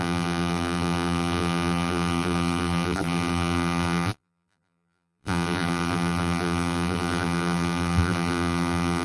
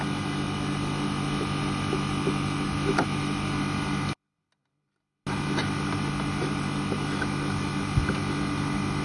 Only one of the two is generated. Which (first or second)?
first